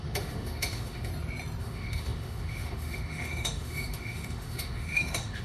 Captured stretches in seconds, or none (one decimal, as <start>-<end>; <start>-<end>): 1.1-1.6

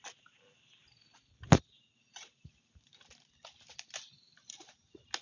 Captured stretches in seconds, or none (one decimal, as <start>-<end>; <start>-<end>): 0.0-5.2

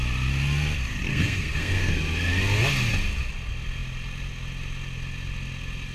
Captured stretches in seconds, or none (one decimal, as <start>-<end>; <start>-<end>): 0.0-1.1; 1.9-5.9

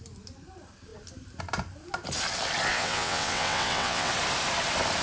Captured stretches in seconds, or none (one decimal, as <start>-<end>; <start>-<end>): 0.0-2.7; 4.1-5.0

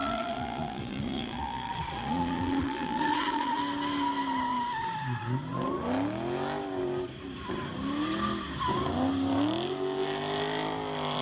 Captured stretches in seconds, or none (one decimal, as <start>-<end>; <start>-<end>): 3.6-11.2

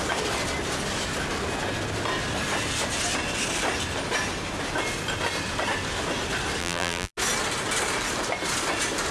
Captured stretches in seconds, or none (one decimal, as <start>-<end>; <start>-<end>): 0.0-6.6; 7.1-9.1

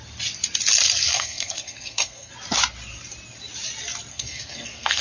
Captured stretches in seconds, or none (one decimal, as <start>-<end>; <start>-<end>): 0.0-1.1; 2.3-4.1

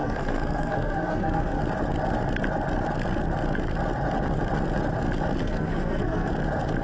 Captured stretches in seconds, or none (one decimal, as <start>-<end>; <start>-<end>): 1.6-5.4; 6.3-6.8